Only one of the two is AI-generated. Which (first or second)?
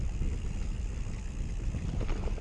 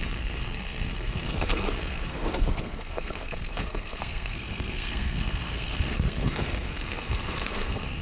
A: second